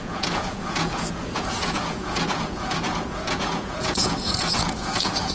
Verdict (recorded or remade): remade